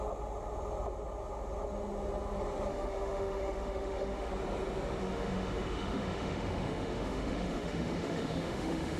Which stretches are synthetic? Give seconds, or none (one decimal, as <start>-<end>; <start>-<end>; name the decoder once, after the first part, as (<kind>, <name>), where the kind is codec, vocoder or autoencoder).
2.7-4.3 (autoencoder, DAC-VAE); 5.0-9.0